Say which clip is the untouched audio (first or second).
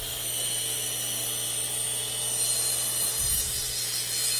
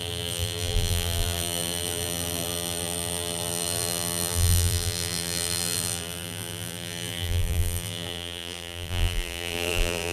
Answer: first